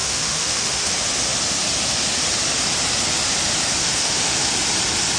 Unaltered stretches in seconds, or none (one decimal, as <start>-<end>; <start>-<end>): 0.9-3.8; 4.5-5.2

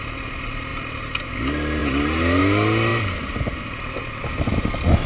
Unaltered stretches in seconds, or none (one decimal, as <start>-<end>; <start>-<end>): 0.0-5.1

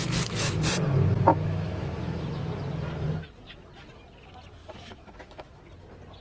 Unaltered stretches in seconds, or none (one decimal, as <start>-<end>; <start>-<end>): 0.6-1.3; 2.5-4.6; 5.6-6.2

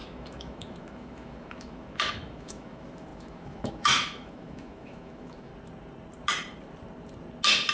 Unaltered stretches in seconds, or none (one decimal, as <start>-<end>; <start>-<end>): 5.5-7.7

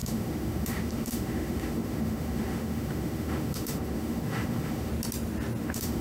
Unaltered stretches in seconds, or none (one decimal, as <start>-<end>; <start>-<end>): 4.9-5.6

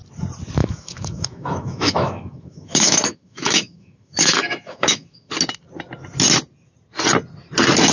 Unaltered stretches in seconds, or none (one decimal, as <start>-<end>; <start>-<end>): 0.0-0.6; 5.3-7.9

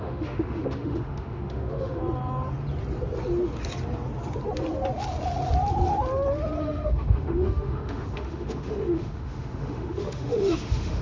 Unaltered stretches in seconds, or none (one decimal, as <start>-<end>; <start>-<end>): 2.0-6.6